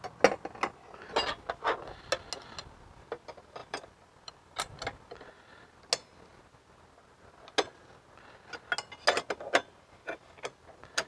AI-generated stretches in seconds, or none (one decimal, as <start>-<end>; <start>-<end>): 3.6-4.7